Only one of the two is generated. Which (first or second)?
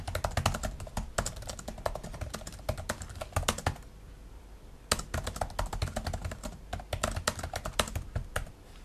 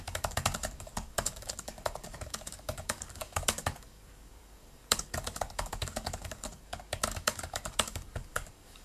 second